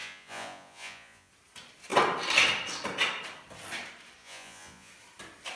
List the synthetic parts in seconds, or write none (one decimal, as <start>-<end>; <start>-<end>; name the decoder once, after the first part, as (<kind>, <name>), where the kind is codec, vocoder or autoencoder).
0.0-1.3 (vocoder, Vocos); 4.2-4.9